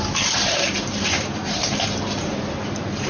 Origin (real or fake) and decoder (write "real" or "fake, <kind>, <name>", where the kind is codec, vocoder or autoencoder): fake, vocoder, BigVGAN v2